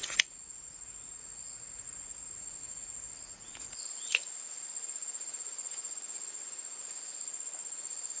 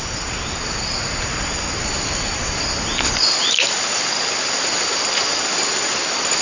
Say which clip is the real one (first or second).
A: second